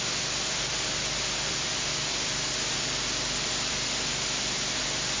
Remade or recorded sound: remade